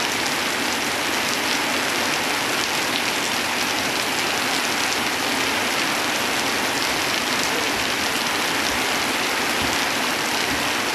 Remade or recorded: recorded